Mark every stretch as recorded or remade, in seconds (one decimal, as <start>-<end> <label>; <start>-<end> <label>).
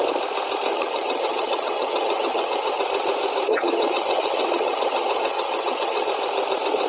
0.0-0.7 recorded; 0.7-2.8 remade; 2.8-3.5 recorded; 3.5-6.1 remade; 6.1-6.9 recorded